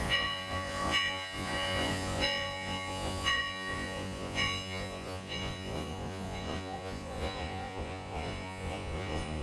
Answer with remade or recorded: remade